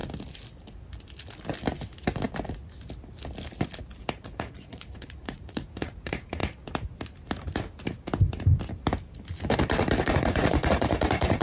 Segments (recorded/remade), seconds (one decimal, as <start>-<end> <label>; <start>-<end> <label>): 0.0-4.1 recorded; 4.1-6.4 remade; 6.4-10.0 recorded; 10.0-11.4 remade